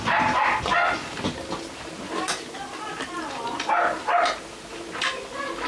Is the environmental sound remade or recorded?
recorded